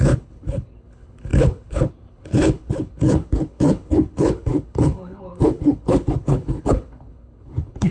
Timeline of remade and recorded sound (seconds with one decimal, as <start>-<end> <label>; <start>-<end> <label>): 0.0-7.9 remade